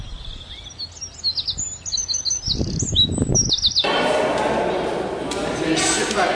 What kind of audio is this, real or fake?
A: real